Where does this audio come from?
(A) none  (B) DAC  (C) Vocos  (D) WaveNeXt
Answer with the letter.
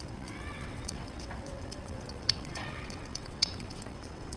D